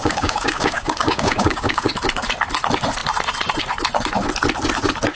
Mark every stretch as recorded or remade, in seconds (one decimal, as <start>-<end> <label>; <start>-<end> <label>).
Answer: 0.0-1.9 remade; 1.9-5.2 recorded